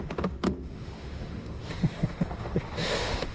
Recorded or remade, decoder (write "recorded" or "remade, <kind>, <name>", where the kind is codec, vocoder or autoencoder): remade, autoencoder, DAC-VAE